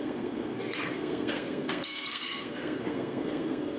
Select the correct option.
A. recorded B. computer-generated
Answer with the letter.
B